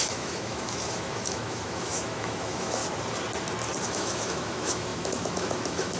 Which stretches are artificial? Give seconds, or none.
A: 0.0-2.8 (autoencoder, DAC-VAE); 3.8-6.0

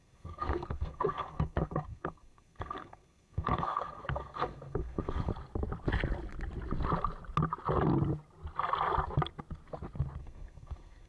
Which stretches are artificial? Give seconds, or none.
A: 0.0-5.3 (codec, SNAC); 10.2-11.1

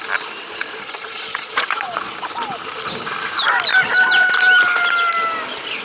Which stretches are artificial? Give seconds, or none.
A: 0.4-2.1 (vocoder, Vocos)

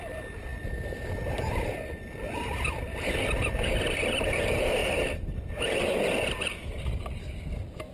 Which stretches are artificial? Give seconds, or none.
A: 4.8-5.6 (vocoder, BigVGAN v2)

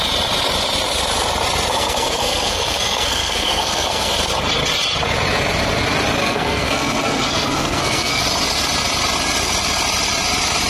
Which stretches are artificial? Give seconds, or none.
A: 1.7-4.1 (codec, SNAC); 6.2-8.2